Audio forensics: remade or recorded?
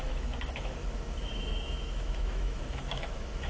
remade